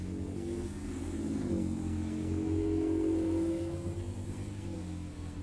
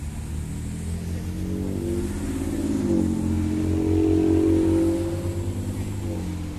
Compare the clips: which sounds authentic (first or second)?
second